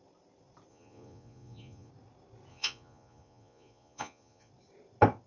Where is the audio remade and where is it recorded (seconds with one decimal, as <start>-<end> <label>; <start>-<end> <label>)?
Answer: 0.0-0.7 recorded; 0.7-1.9 remade; 1.9-2.5 recorded; 2.5-4.5 remade; 4.5-5.3 recorded

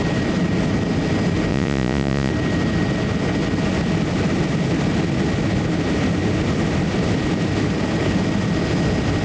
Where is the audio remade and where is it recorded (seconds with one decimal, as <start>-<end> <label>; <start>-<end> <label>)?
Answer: 0.0-1.5 recorded; 1.5-2.3 remade; 2.3-9.2 recorded

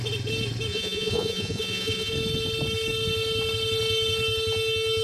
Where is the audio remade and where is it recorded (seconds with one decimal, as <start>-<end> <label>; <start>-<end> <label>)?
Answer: 0.0-0.7 recorded; 0.7-2.1 remade; 2.1-5.0 recorded